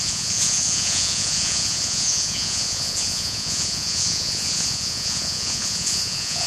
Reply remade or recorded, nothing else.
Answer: remade